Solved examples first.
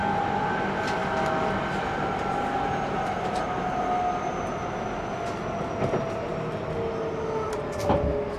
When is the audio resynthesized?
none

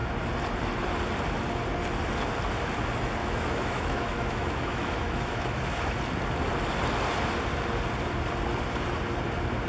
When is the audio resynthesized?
3.2-6.0 (autoencoder, DAC-VAE)

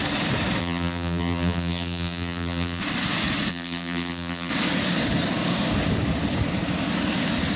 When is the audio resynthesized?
0.6-2.8 (vocoder, BigVGAN v2); 3.5-4.5